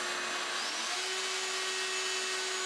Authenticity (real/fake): real